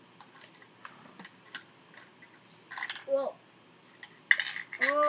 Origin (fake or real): real